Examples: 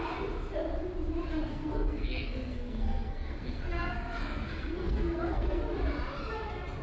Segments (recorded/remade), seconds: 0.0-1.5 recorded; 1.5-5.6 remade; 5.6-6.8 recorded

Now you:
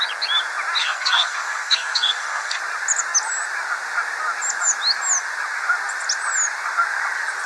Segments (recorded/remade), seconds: 0.0-0.8 recorded; 0.8-2.6 remade; 2.6-7.5 recorded

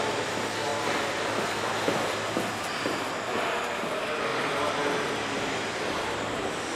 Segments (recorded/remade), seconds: 0.0-6.8 recorded

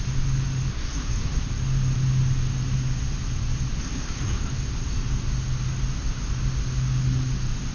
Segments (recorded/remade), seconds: 0.0-0.7 recorded; 0.7-1.5 remade; 1.5-3.8 recorded; 3.8-4.5 remade; 4.5-7.7 recorded

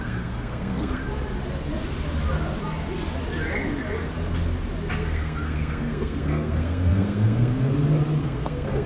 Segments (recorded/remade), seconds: 0.0-1.0 remade; 1.0-4.9 recorded; 4.9-7.7 remade; 7.7-8.2 recorded; 8.2-8.9 remade

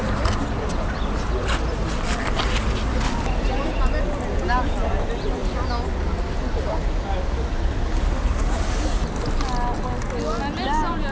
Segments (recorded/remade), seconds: 0.0-11.1 recorded

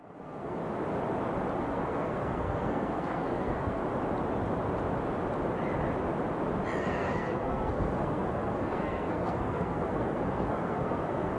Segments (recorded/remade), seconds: 0.0-0.6 remade; 0.6-1.6 recorded; 1.6-3.8 remade; 3.8-6.8 recorded; 6.8-11.4 remade

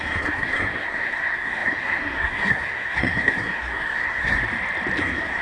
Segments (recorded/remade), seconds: 0.0-4.4 remade; 4.4-5.0 recorded; 5.0-5.4 remade